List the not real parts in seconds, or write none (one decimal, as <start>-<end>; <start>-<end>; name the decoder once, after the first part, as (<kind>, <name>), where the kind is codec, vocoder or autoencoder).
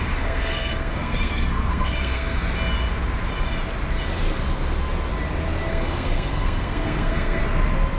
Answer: 0.0-2.4 (codec, SNAC); 5.7-7.4